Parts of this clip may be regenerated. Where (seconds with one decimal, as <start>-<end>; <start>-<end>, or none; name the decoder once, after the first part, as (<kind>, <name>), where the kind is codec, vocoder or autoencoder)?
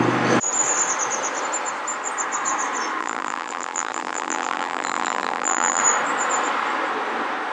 3.0-5.8 (vocoder, BigVGAN v2)